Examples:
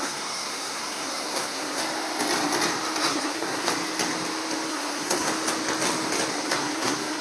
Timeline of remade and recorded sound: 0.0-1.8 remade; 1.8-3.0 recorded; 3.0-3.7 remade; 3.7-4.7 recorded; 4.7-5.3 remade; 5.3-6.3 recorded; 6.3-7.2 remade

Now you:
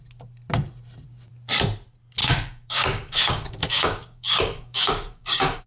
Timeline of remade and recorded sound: 0.0-2.2 recorded; 2.2-5.7 remade

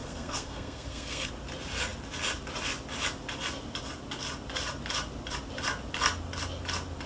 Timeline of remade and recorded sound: 0.0-1.3 remade; 1.3-7.1 recorded

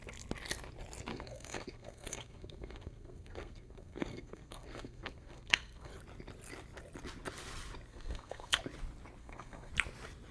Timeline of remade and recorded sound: 0.0-1.1 recorded; 1.1-5.9 remade; 5.9-7.9 recorded; 7.9-8.6 remade; 8.6-9.2 recorded; 9.2-9.7 remade; 9.7-10.3 recorded